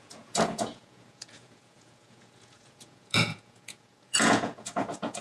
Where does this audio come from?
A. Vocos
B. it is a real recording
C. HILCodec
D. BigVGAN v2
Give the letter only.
A